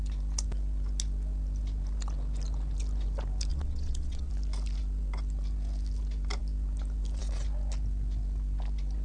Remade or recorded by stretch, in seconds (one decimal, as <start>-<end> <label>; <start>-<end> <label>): 0.0-3.5 recorded; 3.5-4.3 remade; 4.3-9.0 recorded